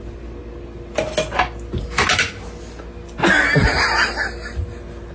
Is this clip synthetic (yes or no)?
no